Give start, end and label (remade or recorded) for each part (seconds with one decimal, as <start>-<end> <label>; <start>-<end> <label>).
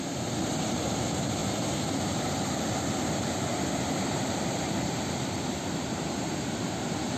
0.0-7.2 remade